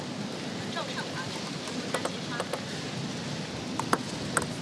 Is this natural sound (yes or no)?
yes